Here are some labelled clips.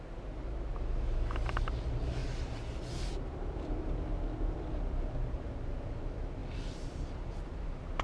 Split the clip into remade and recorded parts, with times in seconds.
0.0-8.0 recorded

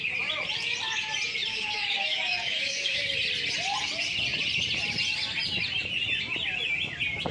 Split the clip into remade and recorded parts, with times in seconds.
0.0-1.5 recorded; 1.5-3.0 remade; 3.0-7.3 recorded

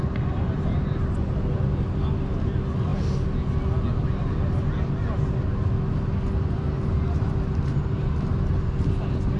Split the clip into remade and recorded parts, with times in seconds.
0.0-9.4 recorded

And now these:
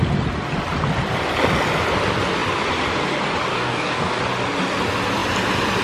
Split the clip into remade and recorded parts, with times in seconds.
0.0-3.5 recorded; 3.5-4.2 remade; 4.2-5.8 recorded

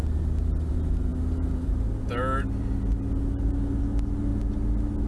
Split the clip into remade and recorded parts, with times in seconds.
0.0-5.1 recorded